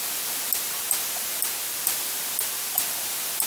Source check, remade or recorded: recorded